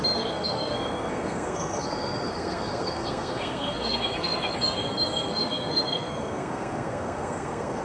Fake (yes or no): yes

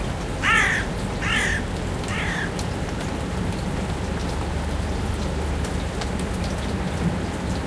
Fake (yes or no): no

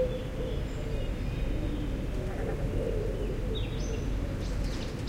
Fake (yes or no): no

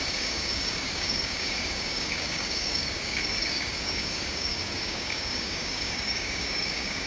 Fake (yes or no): yes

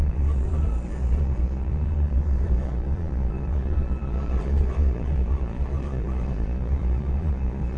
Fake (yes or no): yes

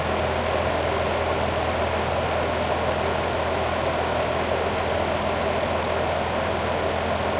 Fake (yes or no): no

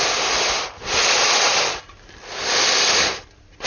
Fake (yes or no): no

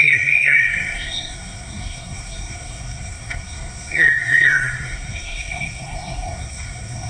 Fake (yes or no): yes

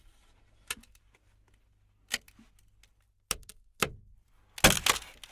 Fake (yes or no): no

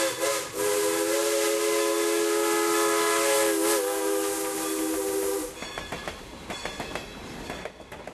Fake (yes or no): no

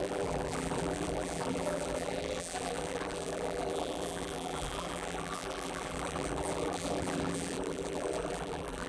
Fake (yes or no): yes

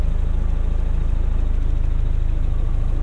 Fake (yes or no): no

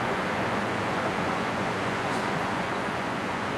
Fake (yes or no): yes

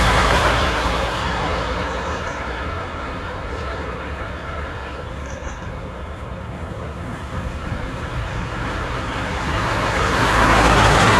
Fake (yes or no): yes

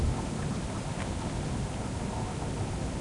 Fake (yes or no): no